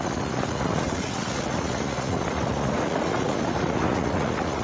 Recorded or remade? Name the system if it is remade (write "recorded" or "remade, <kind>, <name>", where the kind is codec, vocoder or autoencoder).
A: remade, vocoder, Vocos